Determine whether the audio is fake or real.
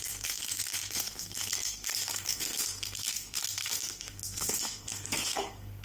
fake